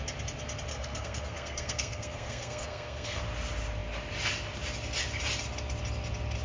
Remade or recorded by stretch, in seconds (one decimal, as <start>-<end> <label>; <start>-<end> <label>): 0.0-0.7 recorded; 0.7-3.2 remade; 3.2-6.4 recorded